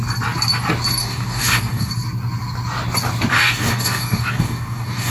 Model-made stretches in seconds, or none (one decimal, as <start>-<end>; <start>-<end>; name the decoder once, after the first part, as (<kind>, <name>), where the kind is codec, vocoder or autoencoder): 1.0-1.9 (codec, DAC); 3.3-5.1